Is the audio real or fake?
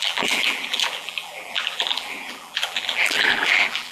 fake